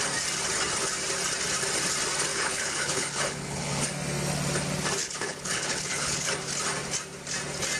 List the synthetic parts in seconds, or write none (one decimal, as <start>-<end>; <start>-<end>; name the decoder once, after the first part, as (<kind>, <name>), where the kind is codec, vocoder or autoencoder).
2.3-3.8 (codec, HILCodec); 5.0-6.3